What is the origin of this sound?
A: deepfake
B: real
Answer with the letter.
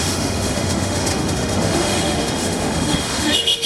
A